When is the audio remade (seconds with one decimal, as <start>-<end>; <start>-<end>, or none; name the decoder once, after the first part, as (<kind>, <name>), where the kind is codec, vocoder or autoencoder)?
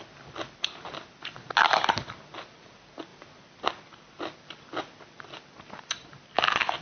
none